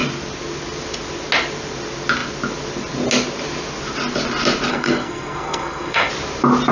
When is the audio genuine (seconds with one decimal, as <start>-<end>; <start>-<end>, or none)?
0.0-4.7; 6.1-6.7